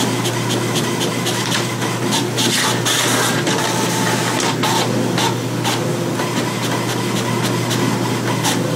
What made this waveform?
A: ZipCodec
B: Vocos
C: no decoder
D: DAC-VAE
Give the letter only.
C